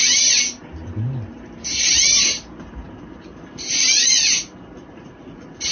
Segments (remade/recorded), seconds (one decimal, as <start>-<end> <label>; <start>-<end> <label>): 0.0-4.8 recorded; 4.8-5.7 remade